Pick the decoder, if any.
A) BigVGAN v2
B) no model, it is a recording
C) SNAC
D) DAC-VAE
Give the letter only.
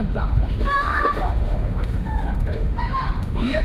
D